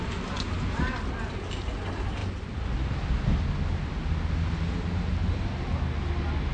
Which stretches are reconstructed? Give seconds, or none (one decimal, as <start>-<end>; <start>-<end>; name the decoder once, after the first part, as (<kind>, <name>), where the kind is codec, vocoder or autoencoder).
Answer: none